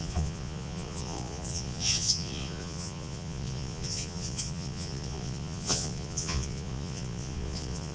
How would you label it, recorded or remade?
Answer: remade